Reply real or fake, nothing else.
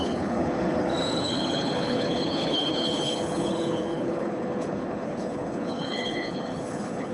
fake